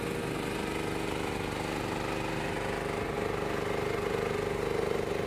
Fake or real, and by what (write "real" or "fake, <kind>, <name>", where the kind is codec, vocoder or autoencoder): real